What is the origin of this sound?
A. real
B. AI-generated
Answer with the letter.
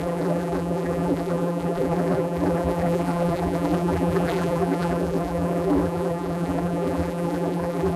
B